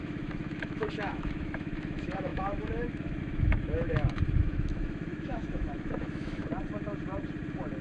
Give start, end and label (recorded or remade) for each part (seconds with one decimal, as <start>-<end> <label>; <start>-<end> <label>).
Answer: 0.0-6.4 remade; 6.4-7.8 recorded